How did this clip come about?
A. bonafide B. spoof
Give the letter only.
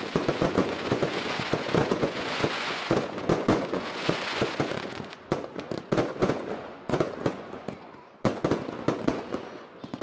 B